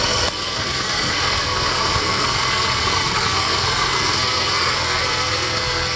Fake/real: fake